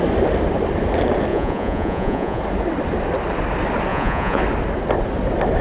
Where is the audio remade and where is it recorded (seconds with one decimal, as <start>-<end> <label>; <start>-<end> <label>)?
0.0-1.3 recorded; 1.3-2.4 remade; 2.4-3.9 recorded; 3.9-4.4 remade; 4.4-5.6 recorded